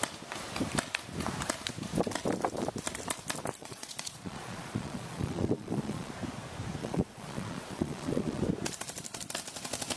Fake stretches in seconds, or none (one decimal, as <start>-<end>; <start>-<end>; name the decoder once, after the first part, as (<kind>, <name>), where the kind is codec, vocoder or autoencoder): 3.6-6.1 (vocoder, Vocos); 6.8-8.4